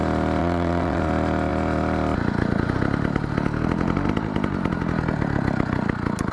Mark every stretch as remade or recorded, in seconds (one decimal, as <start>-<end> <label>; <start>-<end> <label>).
0.0-0.4 recorded; 0.4-1.0 remade; 1.0-6.3 recorded